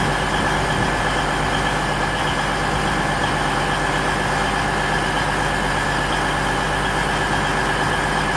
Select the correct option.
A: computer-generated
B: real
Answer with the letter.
B